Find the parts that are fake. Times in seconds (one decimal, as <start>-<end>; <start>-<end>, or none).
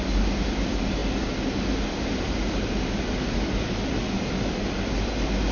none